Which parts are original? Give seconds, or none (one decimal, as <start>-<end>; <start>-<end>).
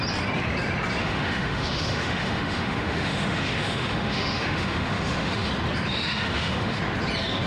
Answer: 0.0-1.0; 5.5-5.9; 6.8-7.5